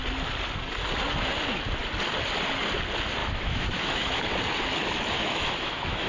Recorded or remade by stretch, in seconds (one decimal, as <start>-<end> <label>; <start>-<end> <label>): 0.0-3.2 recorded; 3.2-4.3 remade; 4.3-5.2 recorded; 5.2-6.1 remade

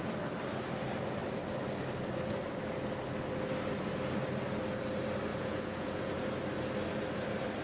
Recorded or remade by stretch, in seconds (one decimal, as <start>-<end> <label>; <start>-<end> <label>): 0.0-5.3 recorded; 5.3-6.1 remade; 6.1-7.6 recorded

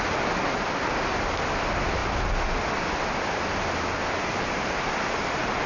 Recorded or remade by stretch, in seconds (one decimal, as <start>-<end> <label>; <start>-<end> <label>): 0.0-5.7 recorded

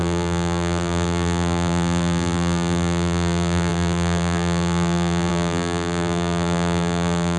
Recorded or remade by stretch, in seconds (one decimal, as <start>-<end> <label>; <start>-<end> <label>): 0.0-7.4 remade

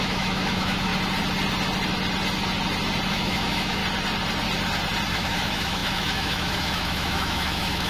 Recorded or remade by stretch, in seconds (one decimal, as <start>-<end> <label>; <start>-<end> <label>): 0.0-0.9 remade; 0.9-3.1 recorded; 3.1-3.8 remade; 3.8-5.1 recorded; 5.1-7.9 remade

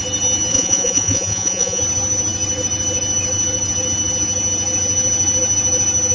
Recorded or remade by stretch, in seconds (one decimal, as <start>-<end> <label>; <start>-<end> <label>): 0.0-0.5 recorded; 0.5-1.8 remade; 1.8-6.1 recorded

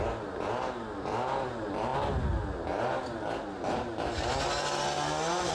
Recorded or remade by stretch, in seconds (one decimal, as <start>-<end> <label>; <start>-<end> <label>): 0.0-5.5 recorded